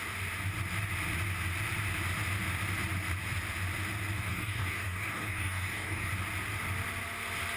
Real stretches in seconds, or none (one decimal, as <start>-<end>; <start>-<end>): 0.0-4.3; 6.1-7.6